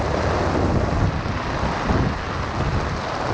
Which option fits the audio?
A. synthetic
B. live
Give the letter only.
B